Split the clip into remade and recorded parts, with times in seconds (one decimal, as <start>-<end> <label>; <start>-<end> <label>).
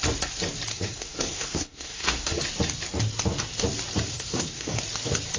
0.0-0.7 recorded; 0.7-2.4 remade; 2.4-4.1 recorded; 4.1-4.8 remade; 4.8-5.4 recorded